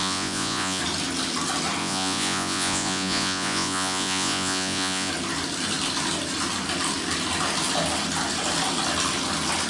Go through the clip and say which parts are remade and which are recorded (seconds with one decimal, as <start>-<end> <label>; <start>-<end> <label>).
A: 0.0-0.8 remade; 0.8-1.8 recorded; 1.8-5.1 remade; 5.1-9.7 recorded